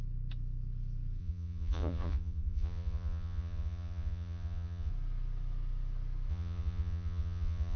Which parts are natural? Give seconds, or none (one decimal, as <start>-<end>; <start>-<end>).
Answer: 0.0-1.2; 4.9-6.3